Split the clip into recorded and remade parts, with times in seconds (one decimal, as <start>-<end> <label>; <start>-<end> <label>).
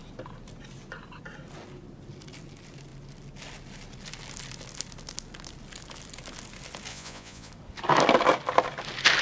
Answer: 0.0-6.9 recorded; 6.9-7.5 remade; 7.5-9.2 recorded